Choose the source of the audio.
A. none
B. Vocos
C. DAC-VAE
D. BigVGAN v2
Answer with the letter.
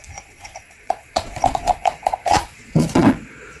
B